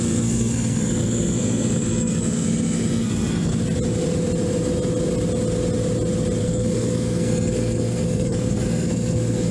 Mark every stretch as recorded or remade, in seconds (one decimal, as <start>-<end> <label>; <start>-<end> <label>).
0.0-3.5 remade; 3.5-6.4 recorded; 6.4-9.5 remade